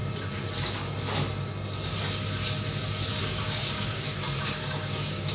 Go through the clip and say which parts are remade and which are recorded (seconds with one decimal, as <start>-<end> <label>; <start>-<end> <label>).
0.0-3.2 recorded; 3.2-5.3 remade